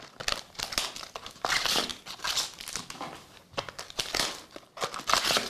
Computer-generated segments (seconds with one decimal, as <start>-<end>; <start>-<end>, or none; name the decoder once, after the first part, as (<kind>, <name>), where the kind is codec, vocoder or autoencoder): none

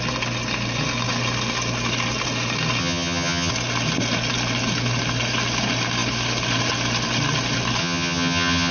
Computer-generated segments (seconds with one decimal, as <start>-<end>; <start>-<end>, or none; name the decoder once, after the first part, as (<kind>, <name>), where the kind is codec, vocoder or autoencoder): 2.8-3.5 (vocoder, HiFi-GAN); 7.8-8.7

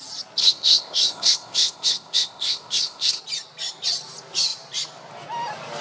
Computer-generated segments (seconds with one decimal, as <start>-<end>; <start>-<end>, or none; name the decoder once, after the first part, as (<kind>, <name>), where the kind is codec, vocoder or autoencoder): 0.4-3.2 (codec, ZipCodec)